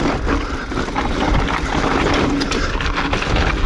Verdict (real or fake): real